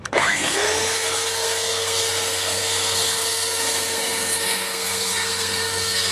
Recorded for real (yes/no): no